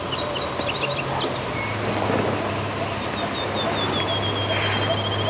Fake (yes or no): no